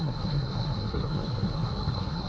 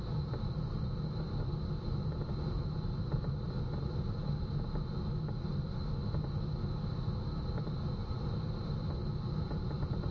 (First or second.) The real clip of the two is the second